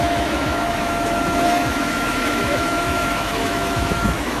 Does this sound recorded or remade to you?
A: remade